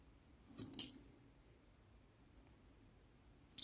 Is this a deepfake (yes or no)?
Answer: no